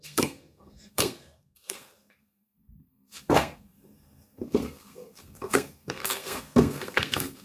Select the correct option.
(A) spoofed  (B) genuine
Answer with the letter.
A